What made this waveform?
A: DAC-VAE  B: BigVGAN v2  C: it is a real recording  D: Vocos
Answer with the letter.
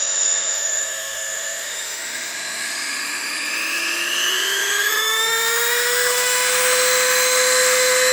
A